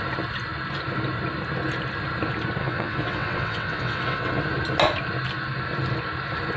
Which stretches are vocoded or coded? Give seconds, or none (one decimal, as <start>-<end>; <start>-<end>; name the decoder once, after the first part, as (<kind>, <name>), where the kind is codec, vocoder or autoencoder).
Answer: 2.6-4.4 (vocoder, WaveNeXt)